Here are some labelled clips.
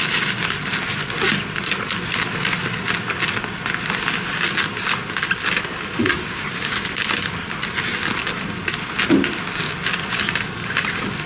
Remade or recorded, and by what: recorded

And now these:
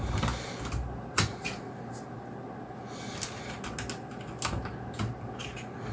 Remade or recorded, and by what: recorded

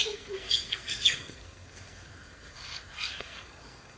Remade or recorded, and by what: remade, codec, SNAC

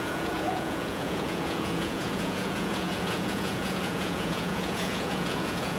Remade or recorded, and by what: remade, vocoder, Vocos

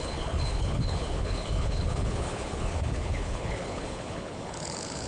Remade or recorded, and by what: remade, codec, HILCodec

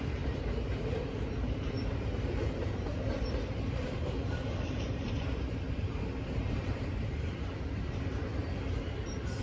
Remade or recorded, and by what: remade, vocoder, BigVGAN v2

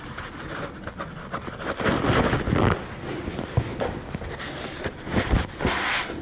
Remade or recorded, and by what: recorded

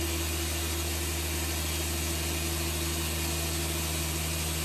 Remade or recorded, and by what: recorded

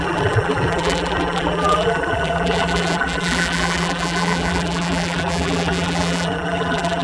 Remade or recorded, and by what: remade, vocoder, BigVGAN v2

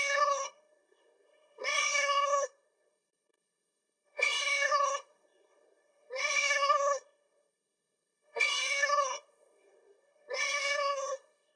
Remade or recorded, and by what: remade, codec, SNAC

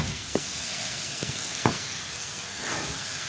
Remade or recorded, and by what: remade, codec, SNAC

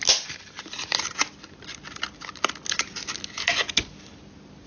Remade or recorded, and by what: recorded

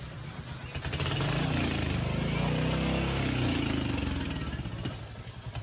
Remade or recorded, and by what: recorded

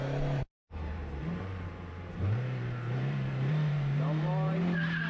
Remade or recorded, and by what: remade, vocoder, BigVGAN v2